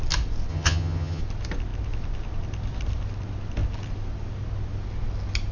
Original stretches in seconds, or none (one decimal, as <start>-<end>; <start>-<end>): 0.0-0.5; 1.2-5.5